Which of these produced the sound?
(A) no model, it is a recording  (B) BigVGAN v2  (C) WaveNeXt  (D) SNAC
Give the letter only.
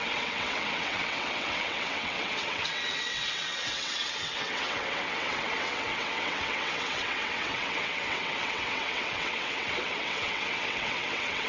C